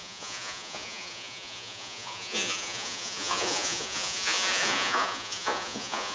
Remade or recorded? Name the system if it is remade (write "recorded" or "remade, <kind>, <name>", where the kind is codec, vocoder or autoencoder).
remade, vocoder, Vocos